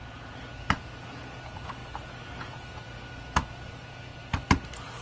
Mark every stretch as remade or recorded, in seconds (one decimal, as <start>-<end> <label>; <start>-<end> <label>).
0.0-1.8 remade; 1.8-2.4 recorded; 2.4-4.1 remade; 4.1-5.0 recorded